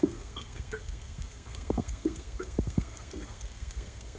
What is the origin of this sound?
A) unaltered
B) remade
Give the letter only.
B